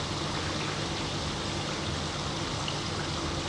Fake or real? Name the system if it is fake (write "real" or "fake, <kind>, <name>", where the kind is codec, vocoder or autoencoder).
real